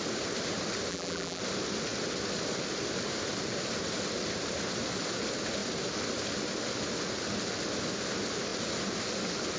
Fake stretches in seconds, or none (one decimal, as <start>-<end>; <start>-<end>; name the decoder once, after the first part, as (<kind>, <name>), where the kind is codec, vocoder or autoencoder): 0.9-1.4 (vocoder, BigVGAN v2)